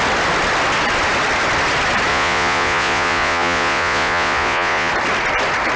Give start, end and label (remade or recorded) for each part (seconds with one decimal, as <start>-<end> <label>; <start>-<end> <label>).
0.0-2.1 recorded; 2.1-4.9 remade; 4.9-5.8 recorded